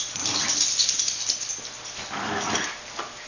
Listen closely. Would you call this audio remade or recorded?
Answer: recorded